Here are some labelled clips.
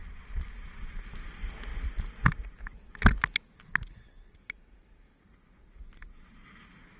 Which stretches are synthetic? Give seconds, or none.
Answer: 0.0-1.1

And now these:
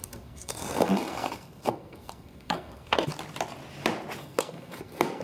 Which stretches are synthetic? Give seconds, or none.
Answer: 0.0-3.1; 4.2-5.2

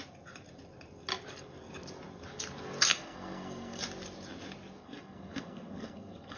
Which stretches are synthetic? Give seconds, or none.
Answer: 2.9-3.8; 4.8-6.4

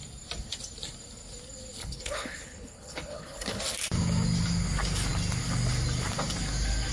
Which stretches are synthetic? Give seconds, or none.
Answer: 1.8-3.6

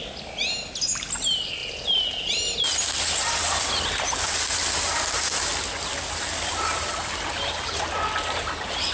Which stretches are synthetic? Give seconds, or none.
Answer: none

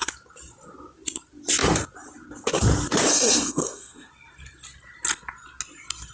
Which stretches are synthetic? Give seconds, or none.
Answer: 3.1-4.1

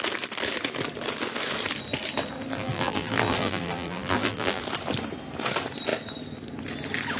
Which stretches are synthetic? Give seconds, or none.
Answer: 2.5-4.6

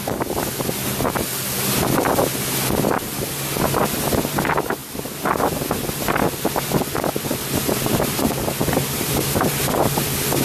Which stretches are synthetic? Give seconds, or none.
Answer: 8.6-9.5